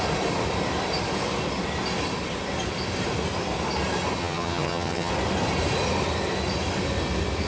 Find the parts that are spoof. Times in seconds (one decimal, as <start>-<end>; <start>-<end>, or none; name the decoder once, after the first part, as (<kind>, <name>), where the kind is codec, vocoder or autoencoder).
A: 4.2-5.1 (vocoder, HiFi-GAN)